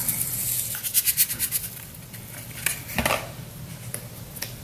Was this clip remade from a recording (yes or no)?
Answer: no